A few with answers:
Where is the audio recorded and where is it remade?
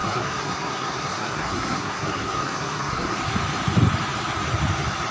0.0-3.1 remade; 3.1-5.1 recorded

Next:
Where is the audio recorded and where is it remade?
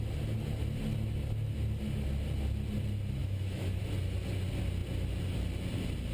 0.0-3.2 recorded; 3.2-3.8 remade; 3.8-6.1 recorded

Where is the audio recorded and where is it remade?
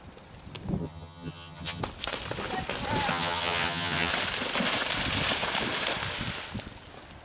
0.0-0.8 recorded; 0.8-1.8 remade; 1.8-3.1 recorded; 3.1-4.1 remade; 4.1-7.2 recorded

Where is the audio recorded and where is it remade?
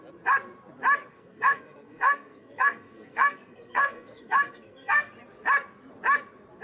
0.0-1.1 recorded; 1.1-5.1 remade; 5.1-6.6 recorded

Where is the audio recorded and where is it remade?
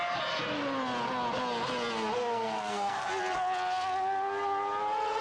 0.0-2.2 recorded; 2.2-3.1 remade; 3.1-5.2 recorded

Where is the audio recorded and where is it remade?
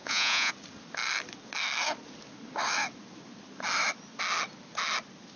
0.0-0.5 remade; 0.5-5.4 recorded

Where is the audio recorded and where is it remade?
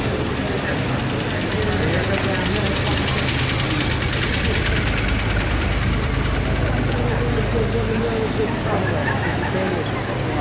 0.0-9.0 recorded; 9.0-9.9 remade; 9.9-10.4 recorded